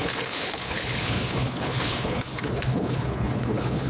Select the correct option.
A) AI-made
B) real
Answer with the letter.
A